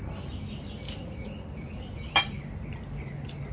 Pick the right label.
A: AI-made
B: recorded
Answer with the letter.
B